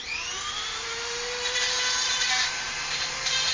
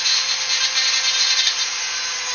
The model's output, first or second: first